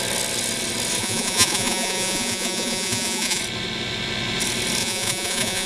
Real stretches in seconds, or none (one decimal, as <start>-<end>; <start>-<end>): 0.0-1.0; 3.4-4.8